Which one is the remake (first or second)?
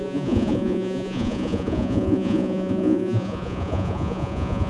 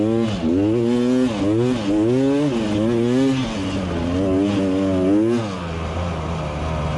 first